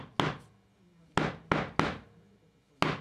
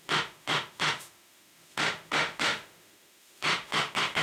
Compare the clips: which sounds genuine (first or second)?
first